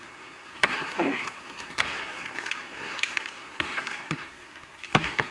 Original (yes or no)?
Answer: no